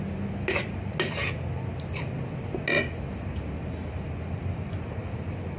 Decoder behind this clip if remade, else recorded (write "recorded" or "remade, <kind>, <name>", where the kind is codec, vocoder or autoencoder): recorded